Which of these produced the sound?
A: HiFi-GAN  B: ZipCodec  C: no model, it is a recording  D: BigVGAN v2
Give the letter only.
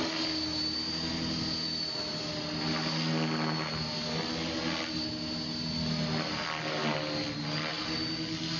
C